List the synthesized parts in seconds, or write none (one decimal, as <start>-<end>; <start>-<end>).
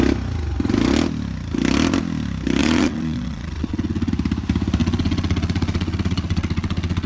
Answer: 2.6-4.1; 4.8-7.1